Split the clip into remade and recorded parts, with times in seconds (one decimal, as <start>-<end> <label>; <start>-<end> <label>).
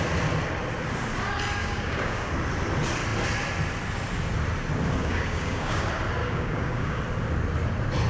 0.0-1.6 recorded; 1.6-2.3 remade; 2.3-5.0 recorded; 5.0-5.8 remade; 5.8-6.2 recorded; 6.2-7.0 remade; 7.0-8.1 recorded